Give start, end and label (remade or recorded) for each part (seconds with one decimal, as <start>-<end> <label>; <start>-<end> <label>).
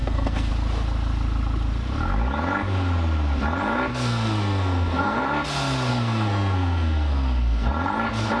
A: 0.0-0.5 remade; 0.5-3.9 recorded; 3.9-5.2 remade; 5.2-5.9 recorded; 5.9-7.7 remade; 7.7-8.4 recorded